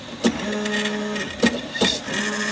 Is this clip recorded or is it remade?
recorded